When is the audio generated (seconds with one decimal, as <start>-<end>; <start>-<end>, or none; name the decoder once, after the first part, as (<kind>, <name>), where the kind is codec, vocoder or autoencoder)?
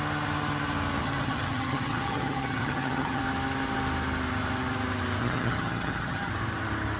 1.0-3.2 (vocoder, HiFi-GAN); 5.2-6.3